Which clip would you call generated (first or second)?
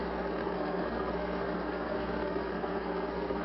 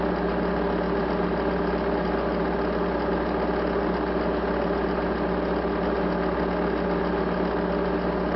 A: first